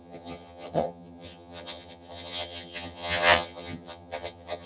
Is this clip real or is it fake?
fake